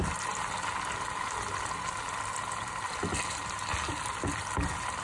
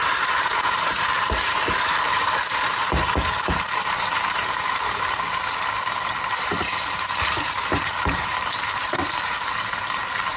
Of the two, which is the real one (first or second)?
first